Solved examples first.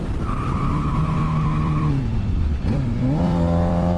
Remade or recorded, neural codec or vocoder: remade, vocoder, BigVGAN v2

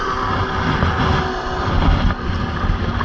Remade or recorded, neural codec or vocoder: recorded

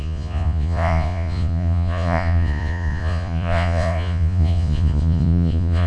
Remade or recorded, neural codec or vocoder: remade, vocoder, Vocos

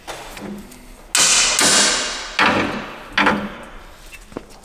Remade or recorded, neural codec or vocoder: recorded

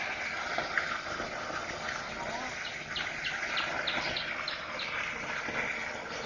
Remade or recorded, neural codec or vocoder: recorded